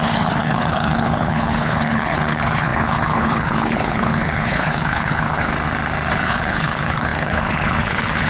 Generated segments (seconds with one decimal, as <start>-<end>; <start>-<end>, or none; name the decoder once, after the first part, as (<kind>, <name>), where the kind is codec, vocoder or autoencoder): 0.0-5.5 (codec, HILCodec); 6.1-8.3